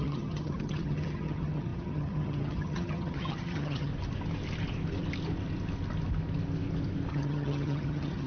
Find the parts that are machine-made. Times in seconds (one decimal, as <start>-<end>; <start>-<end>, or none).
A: 0.0-3.9; 7.1-8.3